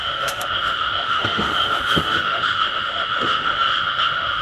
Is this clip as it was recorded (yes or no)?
no